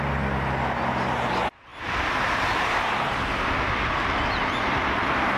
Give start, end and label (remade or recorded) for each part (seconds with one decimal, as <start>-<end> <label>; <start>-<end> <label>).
0.0-5.4 recorded